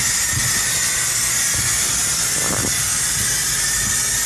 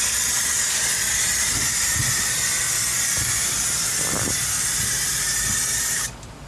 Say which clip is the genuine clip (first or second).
first